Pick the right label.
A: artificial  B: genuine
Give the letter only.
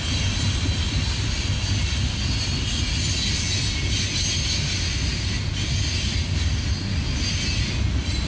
B